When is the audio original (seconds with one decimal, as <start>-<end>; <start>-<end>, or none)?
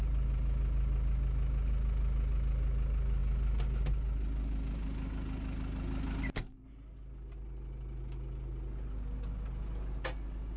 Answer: 0.0-10.6